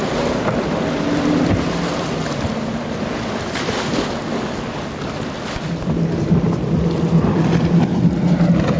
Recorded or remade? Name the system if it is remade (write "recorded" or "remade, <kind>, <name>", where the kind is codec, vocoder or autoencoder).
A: recorded